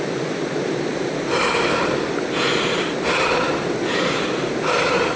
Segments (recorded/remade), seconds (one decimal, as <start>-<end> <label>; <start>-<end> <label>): 0.0-5.2 recorded